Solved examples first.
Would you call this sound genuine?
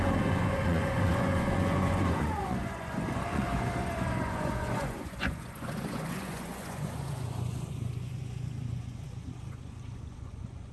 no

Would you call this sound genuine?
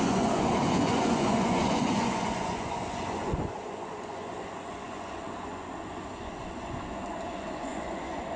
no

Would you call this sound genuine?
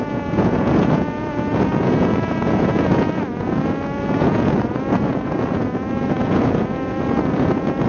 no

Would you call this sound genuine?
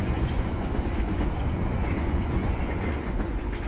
no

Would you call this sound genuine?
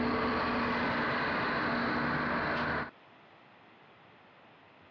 yes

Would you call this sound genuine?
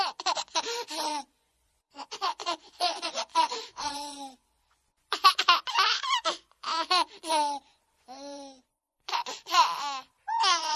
no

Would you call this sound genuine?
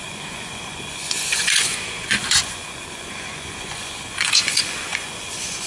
no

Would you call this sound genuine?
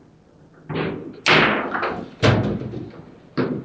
yes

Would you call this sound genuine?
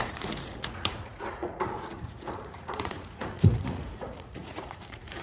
no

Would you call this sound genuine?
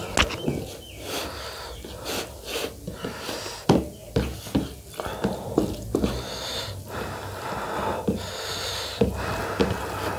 yes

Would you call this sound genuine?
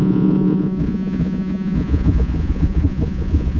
no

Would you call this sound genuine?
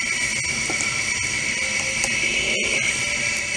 yes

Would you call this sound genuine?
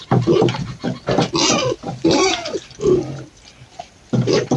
yes